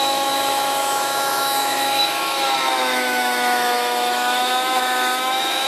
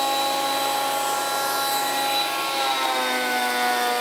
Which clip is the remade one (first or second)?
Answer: first